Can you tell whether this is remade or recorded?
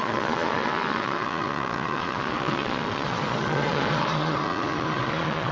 remade